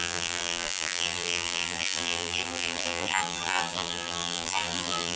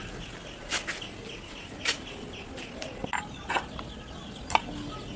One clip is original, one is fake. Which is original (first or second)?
second